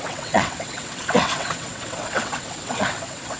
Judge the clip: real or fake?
fake